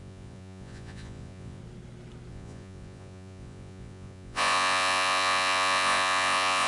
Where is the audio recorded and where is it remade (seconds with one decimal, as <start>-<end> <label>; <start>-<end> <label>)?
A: 0.0-1.6 remade; 1.6-2.3 recorded; 2.3-6.7 remade